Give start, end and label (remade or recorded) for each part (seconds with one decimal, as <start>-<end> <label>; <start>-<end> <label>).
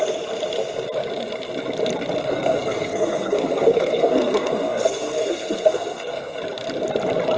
0.0-2.2 recorded; 2.2-6.4 remade; 6.4-7.4 recorded